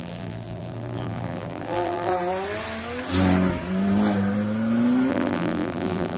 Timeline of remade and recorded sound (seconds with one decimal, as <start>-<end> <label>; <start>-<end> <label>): 0.0-2.1 remade; 2.1-5.1 recorded; 5.1-6.2 remade